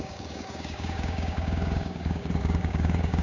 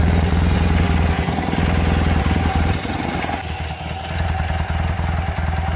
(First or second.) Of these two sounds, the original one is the second